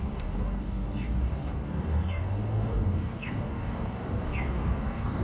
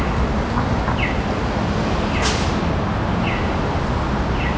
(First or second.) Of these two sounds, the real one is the second